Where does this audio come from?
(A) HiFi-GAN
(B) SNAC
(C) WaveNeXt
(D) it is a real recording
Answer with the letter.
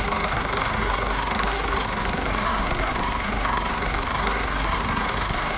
B